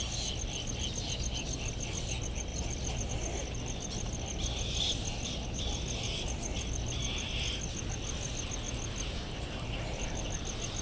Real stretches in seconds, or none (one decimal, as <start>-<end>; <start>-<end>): 0.0-2.5; 3.1-10.8